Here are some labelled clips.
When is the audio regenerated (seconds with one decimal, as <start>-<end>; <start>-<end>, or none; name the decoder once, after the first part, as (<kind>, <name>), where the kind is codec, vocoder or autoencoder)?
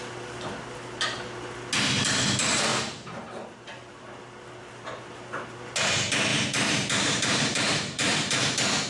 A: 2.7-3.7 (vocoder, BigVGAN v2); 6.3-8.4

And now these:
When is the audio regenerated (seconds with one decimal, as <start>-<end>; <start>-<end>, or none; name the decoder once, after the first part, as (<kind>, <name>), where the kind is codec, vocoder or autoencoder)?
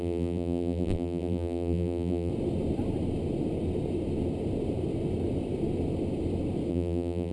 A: 0.0-2.3 (vocoder, BigVGAN v2); 6.7-7.3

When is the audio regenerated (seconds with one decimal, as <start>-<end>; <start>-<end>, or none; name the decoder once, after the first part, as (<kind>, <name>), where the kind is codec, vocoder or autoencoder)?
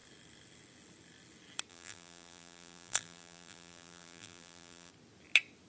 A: 1.7-4.9 (vocoder, BigVGAN v2)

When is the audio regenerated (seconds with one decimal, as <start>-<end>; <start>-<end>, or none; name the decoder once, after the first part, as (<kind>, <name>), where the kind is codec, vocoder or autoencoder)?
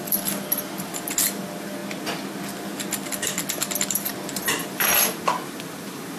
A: 0.0-1.8 (vocoder, BigVGAN v2); 3.1-4.1; 4.7-6.2